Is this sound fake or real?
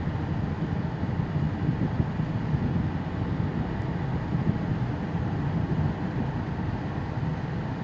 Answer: real